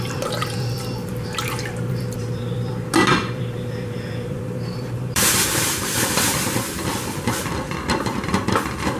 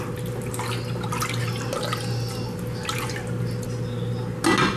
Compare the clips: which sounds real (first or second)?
second